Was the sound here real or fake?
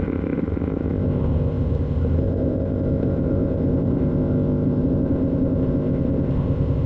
fake